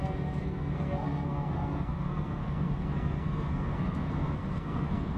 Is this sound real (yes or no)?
no